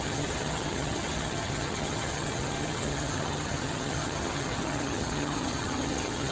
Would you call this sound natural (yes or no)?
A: no